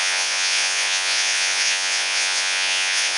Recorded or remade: remade